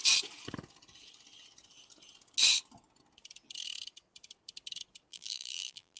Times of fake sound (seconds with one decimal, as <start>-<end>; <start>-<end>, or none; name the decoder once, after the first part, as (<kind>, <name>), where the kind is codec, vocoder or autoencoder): 5.1-6.0 (vocoder, BigVGAN v2)